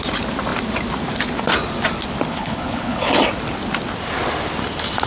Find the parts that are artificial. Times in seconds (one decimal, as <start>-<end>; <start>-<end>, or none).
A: 2.3-3.2